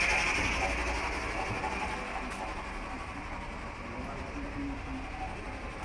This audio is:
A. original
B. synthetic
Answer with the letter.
A